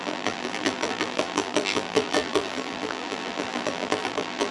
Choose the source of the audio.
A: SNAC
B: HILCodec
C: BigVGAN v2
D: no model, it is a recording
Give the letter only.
C